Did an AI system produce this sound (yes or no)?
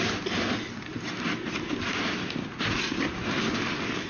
no